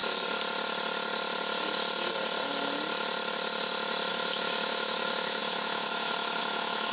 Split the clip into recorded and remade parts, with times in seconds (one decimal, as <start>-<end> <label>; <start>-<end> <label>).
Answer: 0.0-4.1 recorded; 4.1-6.9 remade